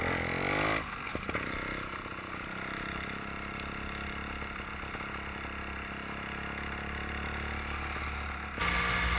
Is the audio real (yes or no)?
yes